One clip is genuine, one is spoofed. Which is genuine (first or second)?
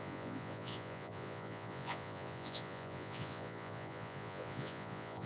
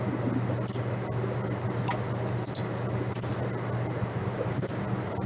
second